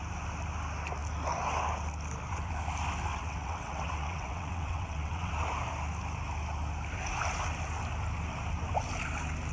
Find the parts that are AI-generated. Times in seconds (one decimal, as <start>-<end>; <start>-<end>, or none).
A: 3.1-5.3